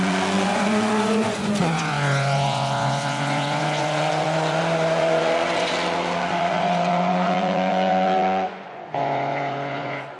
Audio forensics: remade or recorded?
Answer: remade